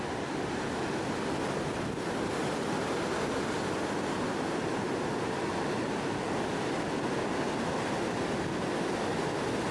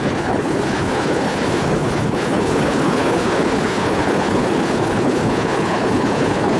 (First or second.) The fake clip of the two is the second